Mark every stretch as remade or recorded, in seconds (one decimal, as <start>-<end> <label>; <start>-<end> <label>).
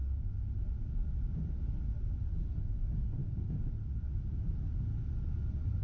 0.0-1.0 recorded; 1.0-1.6 remade; 1.6-5.8 recorded